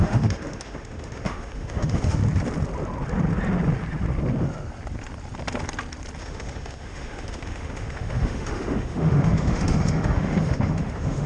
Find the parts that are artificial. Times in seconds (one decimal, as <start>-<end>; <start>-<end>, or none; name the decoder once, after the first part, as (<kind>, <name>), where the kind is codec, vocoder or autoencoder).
0.0-2.2 (autoencoder, DAC-VAE); 6.2-11.3